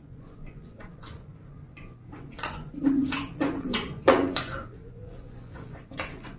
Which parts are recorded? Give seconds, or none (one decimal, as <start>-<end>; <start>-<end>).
none